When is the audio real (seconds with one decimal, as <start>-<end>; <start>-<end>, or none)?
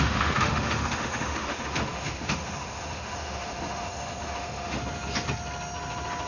4.8-6.3